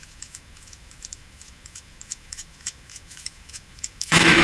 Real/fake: fake